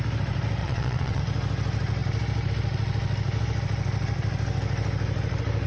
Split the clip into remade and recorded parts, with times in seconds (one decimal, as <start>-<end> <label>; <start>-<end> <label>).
0.0-0.6 recorded; 0.6-1.2 remade; 1.2-5.7 recorded